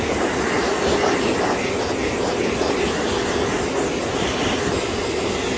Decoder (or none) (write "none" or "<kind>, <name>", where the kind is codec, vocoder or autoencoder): none